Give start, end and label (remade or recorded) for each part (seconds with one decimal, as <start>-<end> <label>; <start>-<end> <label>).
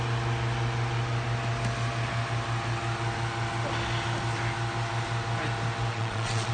0.0-5.9 recorded; 5.9-6.5 remade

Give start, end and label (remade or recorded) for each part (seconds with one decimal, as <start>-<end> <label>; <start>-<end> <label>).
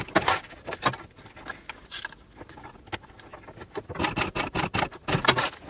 0.0-5.7 recorded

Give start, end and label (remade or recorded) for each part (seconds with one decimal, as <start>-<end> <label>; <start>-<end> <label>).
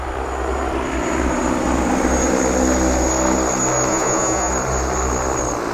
0.0-3.9 recorded; 3.9-4.5 remade; 4.5-5.7 recorded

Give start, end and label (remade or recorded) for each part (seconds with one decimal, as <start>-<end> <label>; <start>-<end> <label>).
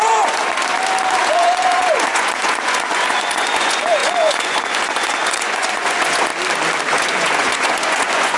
0.0-0.4 remade; 0.4-1.2 recorded; 1.2-6.3 remade; 6.3-6.9 recorded; 6.9-8.4 remade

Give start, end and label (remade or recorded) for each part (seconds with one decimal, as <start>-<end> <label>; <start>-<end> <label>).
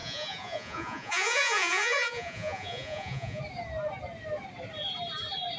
0.0-3.4 remade; 3.4-5.6 recorded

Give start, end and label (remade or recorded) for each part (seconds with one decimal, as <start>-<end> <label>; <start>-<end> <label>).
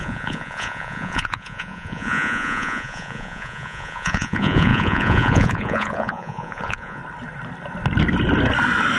0.0-7.0 remade; 7.0-9.0 recorded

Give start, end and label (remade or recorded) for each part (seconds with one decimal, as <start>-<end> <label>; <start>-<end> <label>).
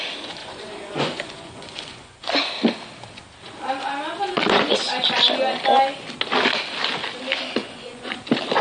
0.0-0.4 recorded; 0.4-2.5 remade; 2.5-4.3 recorded; 4.3-4.9 remade; 4.9-7.6 recorded; 7.6-8.2 remade; 8.2-8.6 recorded